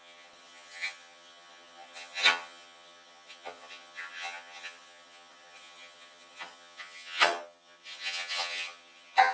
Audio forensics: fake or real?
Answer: fake